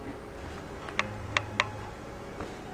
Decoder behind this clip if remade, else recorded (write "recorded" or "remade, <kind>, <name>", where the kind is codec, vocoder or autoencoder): recorded